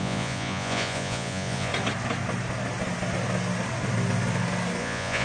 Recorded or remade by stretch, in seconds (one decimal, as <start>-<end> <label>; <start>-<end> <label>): 0.0-1.7 remade; 1.7-4.8 recorded; 4.8-5.2 remade